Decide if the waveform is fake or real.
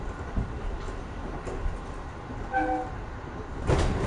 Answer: real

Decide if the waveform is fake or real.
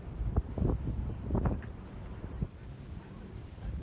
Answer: real